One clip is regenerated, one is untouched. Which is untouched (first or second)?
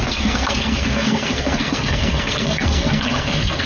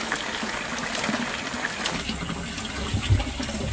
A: second